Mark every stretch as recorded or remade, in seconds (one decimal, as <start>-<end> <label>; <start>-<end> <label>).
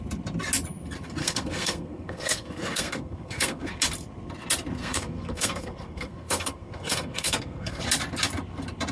0.0-1.2 recorded; 1.2-3.7 remade; 3.7-4.8 recorded; 4.8-7.8 remade; 7.8-8.9 recorded